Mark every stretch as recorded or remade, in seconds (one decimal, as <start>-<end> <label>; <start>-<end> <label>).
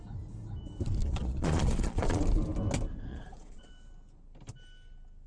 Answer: 0.0-1.0 recorded; 1.0-2.2 remade; 2.2-3.1 recorded; 3.1-3.7 remade; 3.7-5.3 recorded